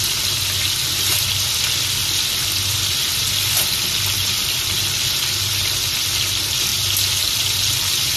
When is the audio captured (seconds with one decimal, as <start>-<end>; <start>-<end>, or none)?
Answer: 0.0-8.2